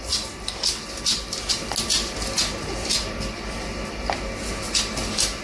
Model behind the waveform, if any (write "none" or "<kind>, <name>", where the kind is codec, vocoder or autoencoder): none